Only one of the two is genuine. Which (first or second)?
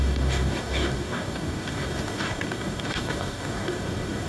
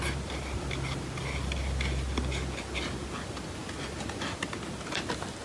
second